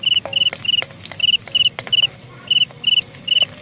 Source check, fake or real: real